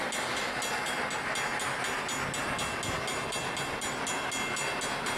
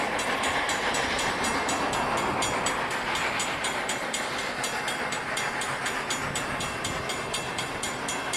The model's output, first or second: second